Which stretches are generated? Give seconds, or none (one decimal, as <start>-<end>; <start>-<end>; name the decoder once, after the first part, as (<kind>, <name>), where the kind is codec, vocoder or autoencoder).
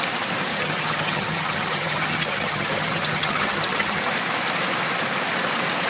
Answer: 0.5-4.0 (vocoder, HiFi-GAN)